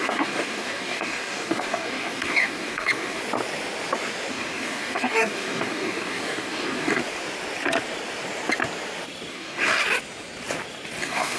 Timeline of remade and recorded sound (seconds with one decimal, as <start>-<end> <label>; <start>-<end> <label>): 0.0-3.2 remade; 3.2-4.3 recorded; 4.3-7.0 remade; 7.0-9.3 recorded; 9.3-9.8 remade; 9.8-11.0 recorded; 11.0-11.4 remade